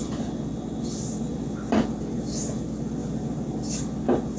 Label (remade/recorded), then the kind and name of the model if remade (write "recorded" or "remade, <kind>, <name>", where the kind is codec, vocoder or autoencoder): recorded